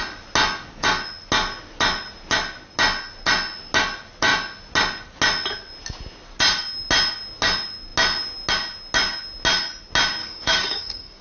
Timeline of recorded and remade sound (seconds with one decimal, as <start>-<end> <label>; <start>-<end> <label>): 0.0-10.2 recorded; 10.2-11.2 remade